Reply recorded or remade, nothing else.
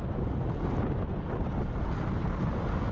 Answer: recorded